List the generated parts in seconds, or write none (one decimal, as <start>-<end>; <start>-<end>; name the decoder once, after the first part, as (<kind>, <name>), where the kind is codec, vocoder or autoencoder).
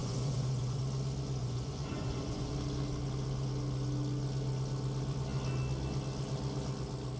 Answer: 0.0-0.8 (vocoder, Vocos); 1.4-2.5